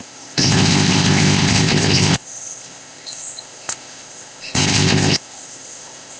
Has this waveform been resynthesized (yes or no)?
yes